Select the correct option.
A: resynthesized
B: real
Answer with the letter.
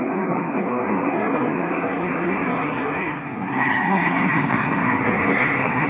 A